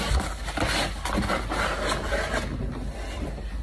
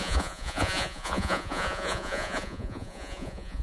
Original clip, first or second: first